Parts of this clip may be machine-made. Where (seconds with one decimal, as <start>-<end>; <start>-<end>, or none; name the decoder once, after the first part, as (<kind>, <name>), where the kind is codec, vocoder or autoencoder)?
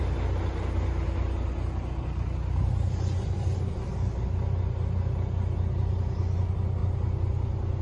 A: none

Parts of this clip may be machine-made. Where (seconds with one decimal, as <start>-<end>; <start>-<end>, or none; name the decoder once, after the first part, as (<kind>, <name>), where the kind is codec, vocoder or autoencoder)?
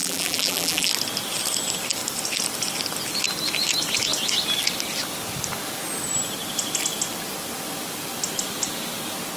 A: 0.0-0.9 (vocoder, BigVGAN v2)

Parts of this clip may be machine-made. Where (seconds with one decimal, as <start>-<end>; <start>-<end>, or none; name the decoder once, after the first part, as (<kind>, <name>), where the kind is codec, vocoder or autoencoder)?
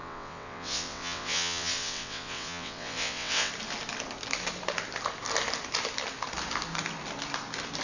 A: 0.0-3.5 (vocoder, WaveNeXt)